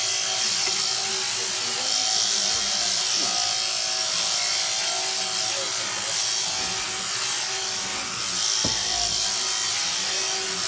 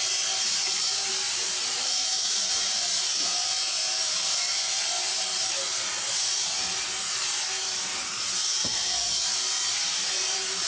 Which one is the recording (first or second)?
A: first